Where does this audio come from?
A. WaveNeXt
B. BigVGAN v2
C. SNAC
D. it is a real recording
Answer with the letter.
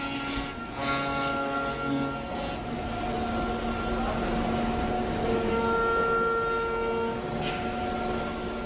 D